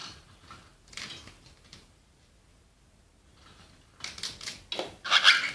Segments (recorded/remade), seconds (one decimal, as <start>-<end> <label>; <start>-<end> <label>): 0.0-2.8 remade; 2.8-5.5 recorded